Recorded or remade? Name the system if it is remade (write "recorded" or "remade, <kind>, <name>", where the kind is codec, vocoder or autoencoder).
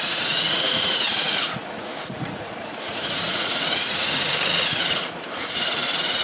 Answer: remade, vocoder, Vocos